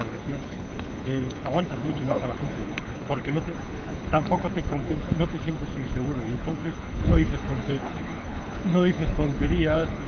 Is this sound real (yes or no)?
no